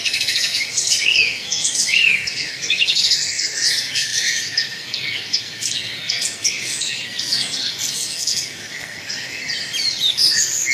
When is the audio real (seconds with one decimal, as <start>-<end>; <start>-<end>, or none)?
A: 9.4-10.1